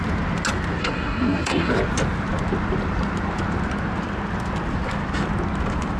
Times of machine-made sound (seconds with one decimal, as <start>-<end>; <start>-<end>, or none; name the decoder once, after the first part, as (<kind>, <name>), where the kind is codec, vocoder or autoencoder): 0.8-1.7 (codec, SNAC)